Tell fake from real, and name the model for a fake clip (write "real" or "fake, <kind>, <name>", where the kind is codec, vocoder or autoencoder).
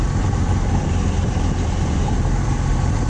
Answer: fake, vocoder, BigVGAN v2